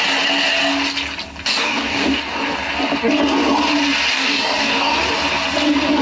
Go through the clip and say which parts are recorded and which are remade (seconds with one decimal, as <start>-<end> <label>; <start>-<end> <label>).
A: 0.0-1.5 recorded; 1.5-2.2 remade; 2.2-4.1 recorded; 4.1-5.0 remade; 5.0-6.0 recorded